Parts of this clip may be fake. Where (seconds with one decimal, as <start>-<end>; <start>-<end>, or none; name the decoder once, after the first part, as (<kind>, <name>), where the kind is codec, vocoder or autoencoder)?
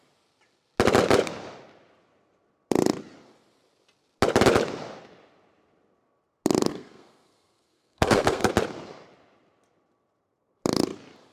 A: 6.7-8.5 (codec, SNAC)